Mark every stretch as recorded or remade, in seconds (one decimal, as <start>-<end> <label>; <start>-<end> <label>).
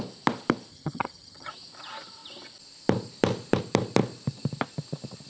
0.0-0.7 recorded; 0.7-1.5 remade; 1.5-5.3 recorded